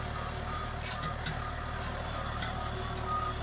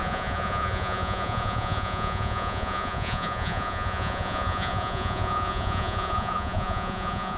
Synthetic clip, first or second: second